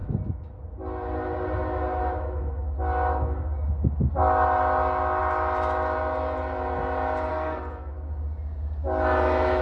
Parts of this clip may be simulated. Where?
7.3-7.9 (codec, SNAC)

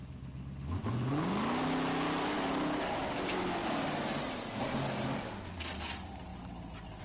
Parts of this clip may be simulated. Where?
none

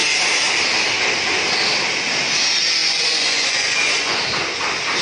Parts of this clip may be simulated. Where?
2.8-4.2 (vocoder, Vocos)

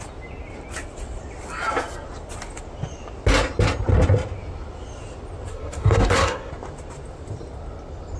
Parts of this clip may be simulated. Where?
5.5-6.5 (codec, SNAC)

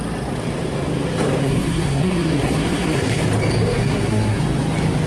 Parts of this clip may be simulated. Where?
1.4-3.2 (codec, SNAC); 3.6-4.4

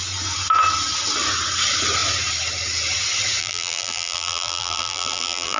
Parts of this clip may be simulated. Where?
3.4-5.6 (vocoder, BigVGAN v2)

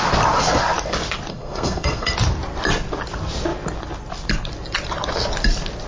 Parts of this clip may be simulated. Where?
1.3-2.1 (codec, SNAC)